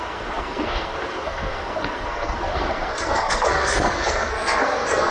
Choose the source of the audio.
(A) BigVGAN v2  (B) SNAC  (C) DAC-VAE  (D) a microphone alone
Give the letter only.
B